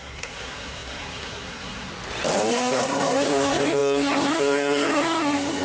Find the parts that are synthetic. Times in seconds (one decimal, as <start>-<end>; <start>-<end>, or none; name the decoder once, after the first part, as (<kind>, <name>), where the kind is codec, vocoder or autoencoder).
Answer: 0.0-1.9 (codec, SNAC); 2.5-5.6